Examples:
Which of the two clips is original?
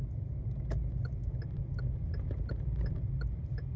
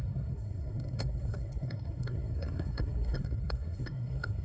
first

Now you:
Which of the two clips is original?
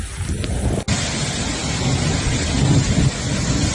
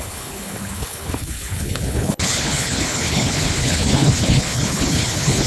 first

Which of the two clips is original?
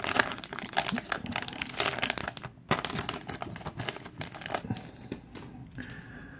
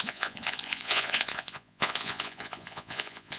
first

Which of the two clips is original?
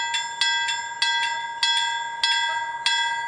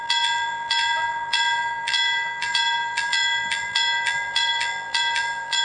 first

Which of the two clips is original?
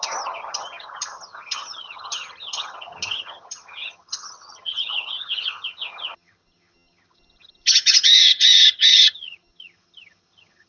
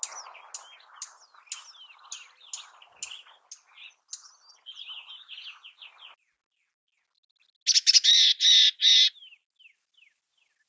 second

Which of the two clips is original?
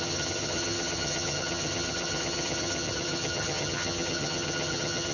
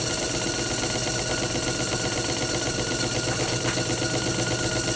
second